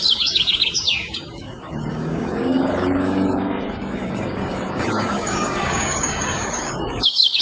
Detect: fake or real fake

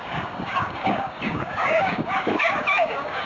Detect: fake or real fake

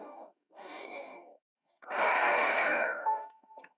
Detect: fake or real fake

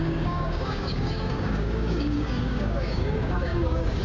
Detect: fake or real fake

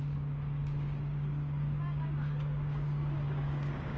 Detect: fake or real fake